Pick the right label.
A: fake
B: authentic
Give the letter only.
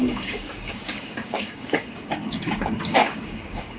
A